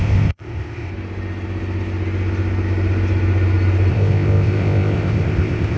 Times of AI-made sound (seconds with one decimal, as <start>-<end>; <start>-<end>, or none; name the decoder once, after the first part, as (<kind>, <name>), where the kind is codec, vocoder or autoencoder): 0.0-0.9 (codec, ZipCodec); 3.9-5.8